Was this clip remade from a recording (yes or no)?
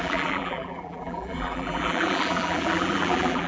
yes